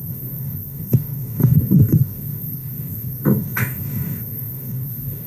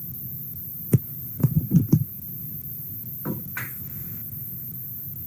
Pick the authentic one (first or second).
second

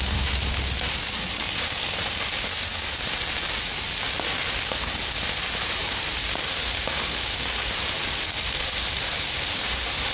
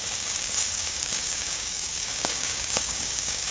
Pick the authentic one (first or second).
first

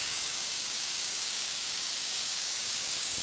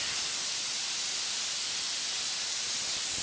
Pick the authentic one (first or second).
second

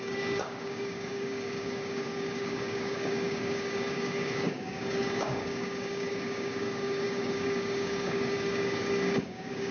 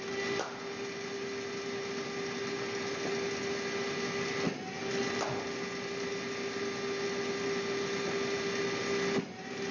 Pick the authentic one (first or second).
second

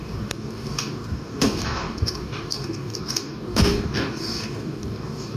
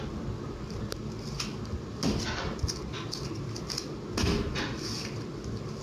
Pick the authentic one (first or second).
second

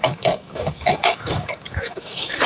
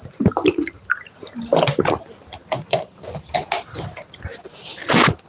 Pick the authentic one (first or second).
second